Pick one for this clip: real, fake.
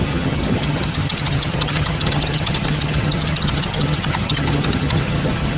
fake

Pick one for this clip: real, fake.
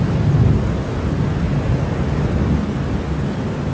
real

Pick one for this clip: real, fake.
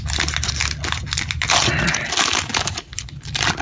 real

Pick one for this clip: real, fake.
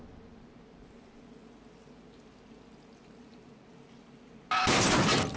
real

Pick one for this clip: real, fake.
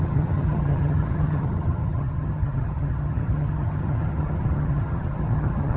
fake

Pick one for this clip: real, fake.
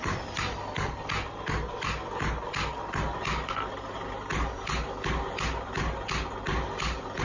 real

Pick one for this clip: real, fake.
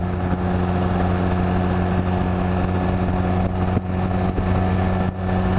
real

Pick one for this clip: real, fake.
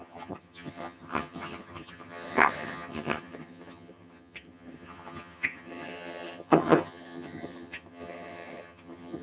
fake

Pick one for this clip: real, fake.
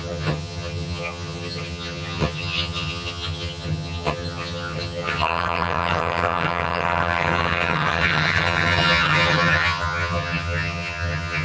fake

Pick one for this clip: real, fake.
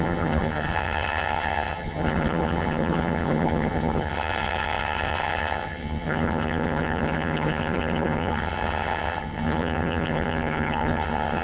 fake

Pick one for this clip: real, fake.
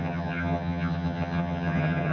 fake